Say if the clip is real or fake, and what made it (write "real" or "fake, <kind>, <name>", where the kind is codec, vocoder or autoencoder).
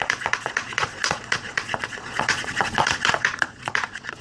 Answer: fake, vocoder, Vocos